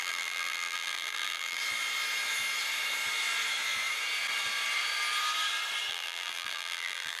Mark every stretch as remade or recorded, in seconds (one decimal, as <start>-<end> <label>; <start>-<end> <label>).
0.0-1.6 remade; 1.6-5.9 recorded; 5.9-7.2 remade